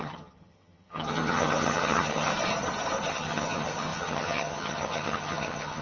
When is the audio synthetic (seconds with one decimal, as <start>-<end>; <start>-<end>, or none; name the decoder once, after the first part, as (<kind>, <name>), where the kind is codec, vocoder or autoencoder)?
0.0-2.3 (vocoder, HiFi-GAN); 3.1-5.8